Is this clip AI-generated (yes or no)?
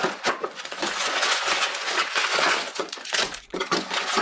yes